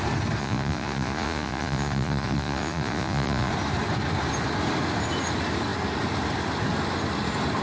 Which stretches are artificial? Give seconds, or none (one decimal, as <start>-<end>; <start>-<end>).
0.4-3.5